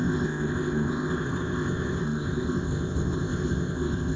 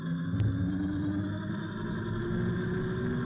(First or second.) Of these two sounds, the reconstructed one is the first